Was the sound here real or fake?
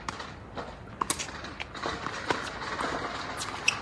real